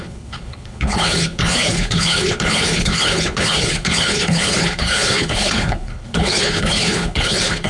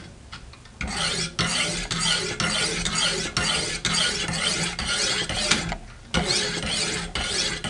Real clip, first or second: second